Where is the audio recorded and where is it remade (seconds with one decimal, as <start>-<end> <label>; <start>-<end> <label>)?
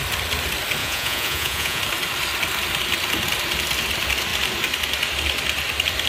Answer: 0.0-0.8 recorded; 0.8-1.8 remade; 1.8-6.1 recorded